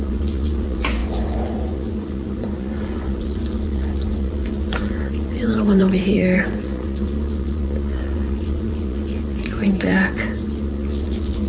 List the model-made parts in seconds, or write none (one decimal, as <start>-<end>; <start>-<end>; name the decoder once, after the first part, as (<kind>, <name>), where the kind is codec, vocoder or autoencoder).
0.0-11.5 (vocoder, Vocos)